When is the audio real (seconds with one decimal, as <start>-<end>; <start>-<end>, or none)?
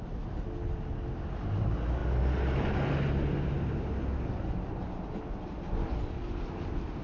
0.0-7.0